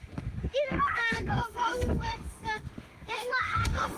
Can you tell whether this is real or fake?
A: fake